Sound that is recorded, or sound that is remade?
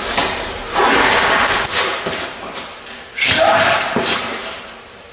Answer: recorded